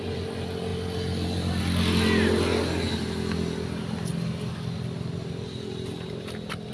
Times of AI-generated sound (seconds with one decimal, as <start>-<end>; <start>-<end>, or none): 0.7-1.6